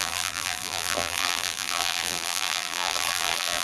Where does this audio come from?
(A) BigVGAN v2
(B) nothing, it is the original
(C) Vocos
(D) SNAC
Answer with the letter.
A